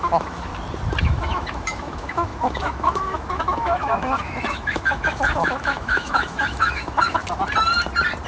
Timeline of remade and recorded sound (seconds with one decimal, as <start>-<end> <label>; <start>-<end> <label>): 0.0-0.5 remade; 0.5-1.0 recorded; 1.0-7.2 remade; 7.2-8.3 recorded